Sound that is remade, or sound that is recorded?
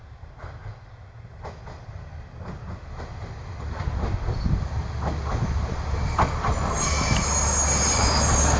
recorded